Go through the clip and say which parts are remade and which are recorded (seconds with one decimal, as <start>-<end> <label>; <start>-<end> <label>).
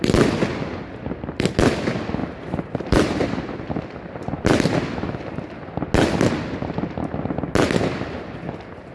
0.0-2.2 recorded; 2.2-3.6 remade; 3.6-8.9 recorded